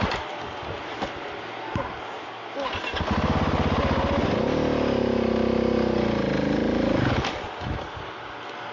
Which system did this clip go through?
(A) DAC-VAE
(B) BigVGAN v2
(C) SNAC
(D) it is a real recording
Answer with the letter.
D